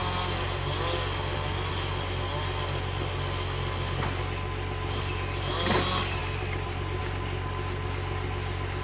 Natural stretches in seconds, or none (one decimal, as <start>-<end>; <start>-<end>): 0.0-6.2; 7.0-8.8